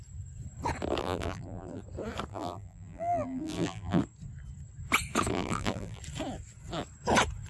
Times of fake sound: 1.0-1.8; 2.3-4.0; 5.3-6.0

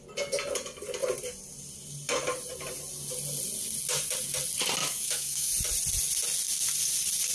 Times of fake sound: 4.8-5.5

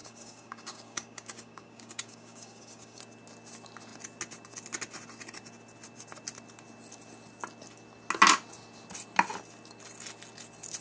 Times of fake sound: 0.0-3.0

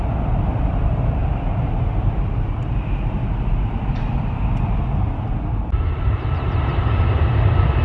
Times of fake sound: 5.6-7.8